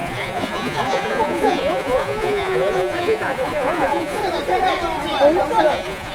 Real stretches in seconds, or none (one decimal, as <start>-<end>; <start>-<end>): 4.2-5.6